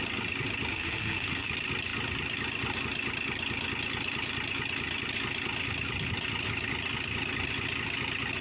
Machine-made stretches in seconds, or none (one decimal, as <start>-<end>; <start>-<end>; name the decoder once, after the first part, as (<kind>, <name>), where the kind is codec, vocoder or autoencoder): 0.7-1.5 (autoencoder, DAC-VAE)